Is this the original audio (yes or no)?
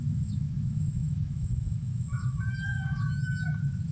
no